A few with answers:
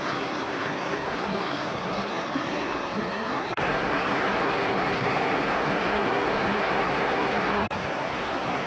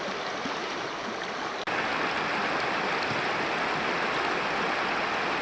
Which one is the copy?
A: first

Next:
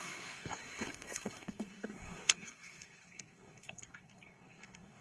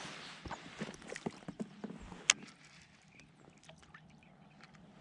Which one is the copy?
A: first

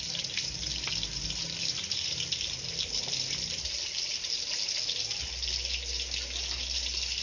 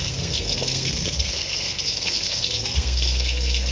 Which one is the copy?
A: second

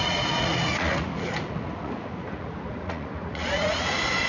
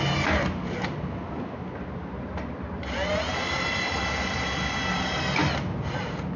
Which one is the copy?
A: first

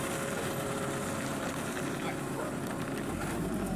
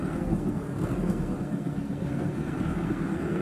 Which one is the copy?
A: second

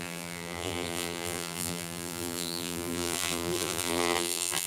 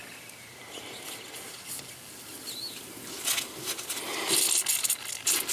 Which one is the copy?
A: first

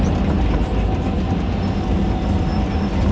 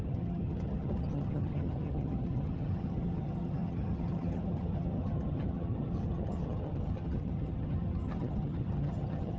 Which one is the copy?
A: second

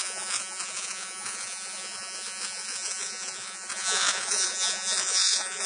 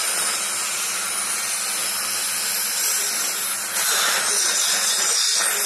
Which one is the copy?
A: first